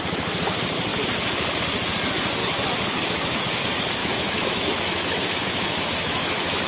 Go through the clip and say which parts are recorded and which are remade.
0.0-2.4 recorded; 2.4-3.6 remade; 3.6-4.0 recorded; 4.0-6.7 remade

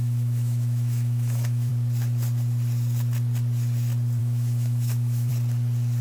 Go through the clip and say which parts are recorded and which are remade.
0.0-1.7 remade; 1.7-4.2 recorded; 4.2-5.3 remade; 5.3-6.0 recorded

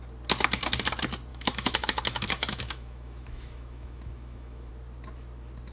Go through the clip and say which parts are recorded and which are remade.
0.0-1.3 recorded; 1.3-4.7 remade; 4.7-5.7 recorded

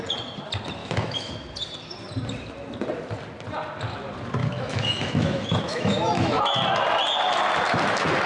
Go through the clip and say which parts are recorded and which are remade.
0.0-0.8 recorded; 0.8-1.3 remade; 1.3-4.4 recorded; 4.4-6.4 remade; 6.4-8.3 recorded

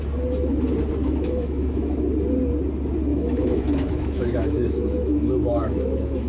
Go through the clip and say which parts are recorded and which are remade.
0.0-1.0 recorded; 1.0-2.0 remade; 2.0-3.1 recorded; 3.1-6.3 remade

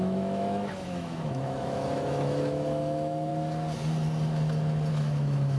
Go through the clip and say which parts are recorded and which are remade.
0.0-3.3 remade; 3.3-4.9 recorded; 4.9-5.6 remade